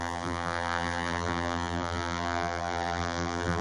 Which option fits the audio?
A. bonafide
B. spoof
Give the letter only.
B